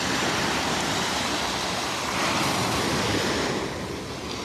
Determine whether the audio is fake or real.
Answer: real